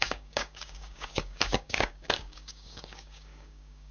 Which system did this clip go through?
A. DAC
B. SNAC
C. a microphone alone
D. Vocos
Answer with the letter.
A